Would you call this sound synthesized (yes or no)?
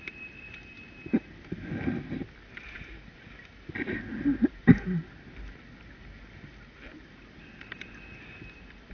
no